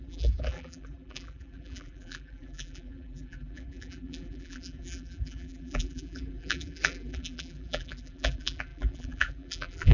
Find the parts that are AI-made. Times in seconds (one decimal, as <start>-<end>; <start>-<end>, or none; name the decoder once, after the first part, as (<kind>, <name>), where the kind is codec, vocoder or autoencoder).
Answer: 0.0-9.9 (vocoder, BigVGAN v2)